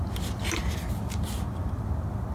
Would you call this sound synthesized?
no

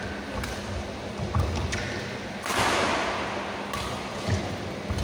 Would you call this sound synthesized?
no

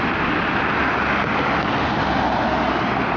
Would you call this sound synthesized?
no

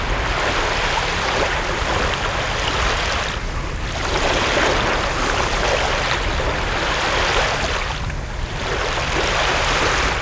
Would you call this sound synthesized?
no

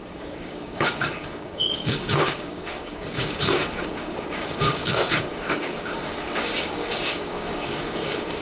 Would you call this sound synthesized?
yes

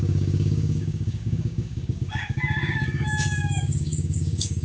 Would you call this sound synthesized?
yes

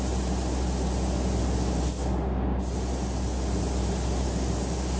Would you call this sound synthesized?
no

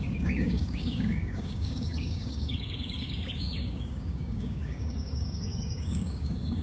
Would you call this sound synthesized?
yes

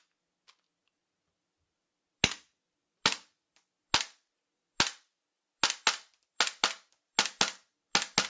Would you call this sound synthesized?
no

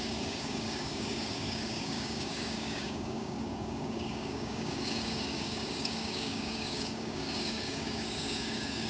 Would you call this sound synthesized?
yes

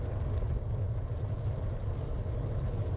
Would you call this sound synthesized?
no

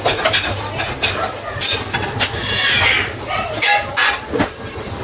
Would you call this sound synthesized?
no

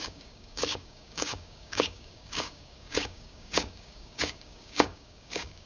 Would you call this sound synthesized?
yes